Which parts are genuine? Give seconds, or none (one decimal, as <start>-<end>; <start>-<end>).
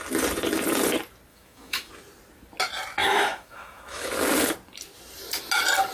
0.0-1.3; 1.9-3.0; 4.1-5.9